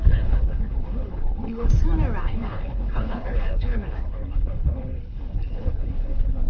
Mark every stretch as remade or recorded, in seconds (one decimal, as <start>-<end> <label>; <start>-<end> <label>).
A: 0.0-1.7 remade; 1.7-2.2 recorded; 2.2-6.5 remade